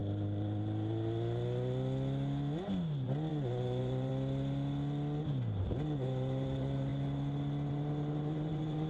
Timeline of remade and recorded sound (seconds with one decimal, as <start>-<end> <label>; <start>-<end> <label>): 0.0-3.3 recorded; 3.3-4.1 remade; 4.1-5.2 recorded; 5.2-6.9 remade; 6.9-7.7 recorded; 7.7-8.9 remade